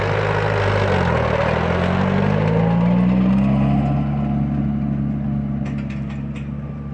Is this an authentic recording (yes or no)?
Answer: yes